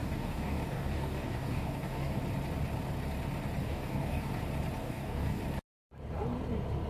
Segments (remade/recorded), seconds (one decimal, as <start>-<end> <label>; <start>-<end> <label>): 0.0-2.2 remade; 2.2-3.6 recorded; 3.6-4.3 remade; 4.3-4.8 recorded; 4.8-5.4 remade; 5.4-6.9 recorded